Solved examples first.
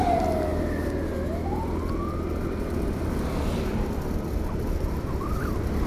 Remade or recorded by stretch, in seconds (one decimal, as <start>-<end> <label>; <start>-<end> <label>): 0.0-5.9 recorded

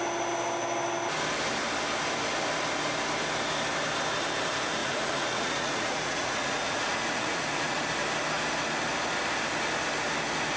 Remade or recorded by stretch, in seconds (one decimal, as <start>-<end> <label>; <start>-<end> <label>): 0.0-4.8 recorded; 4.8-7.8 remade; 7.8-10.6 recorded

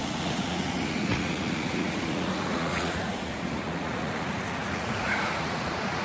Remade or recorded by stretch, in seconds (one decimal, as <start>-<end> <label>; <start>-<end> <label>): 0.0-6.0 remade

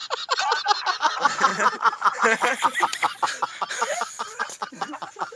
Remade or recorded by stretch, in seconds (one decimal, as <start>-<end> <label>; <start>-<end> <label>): 0.0-0.9 recorded; 0.9-1.5 remade; 1.5-2.1 recorded; 2.1-2.5 remade; 2.5-3.7 recorded; 3.7-5.4 remade